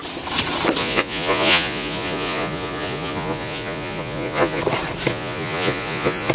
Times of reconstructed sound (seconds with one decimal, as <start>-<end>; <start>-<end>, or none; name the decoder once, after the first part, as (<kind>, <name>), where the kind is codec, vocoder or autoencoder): 0.8-4.6 (vocoder, Vocos); 5.1-6.3